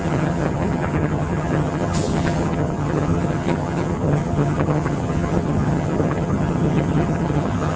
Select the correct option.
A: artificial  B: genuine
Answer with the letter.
A